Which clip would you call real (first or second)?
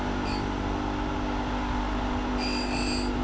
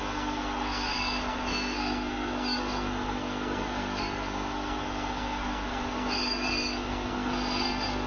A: first